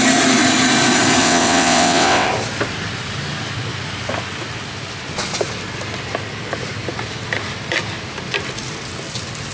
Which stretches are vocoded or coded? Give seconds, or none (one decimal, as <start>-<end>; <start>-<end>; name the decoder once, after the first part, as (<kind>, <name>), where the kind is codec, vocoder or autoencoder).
1.2-2.3 (vocoder, WaveNeXt)